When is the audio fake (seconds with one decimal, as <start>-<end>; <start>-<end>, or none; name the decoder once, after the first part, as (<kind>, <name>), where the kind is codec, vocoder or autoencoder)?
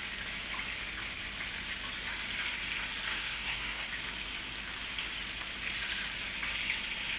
3.1-3.9 (codec, SNAC)